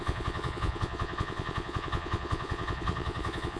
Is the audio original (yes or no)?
no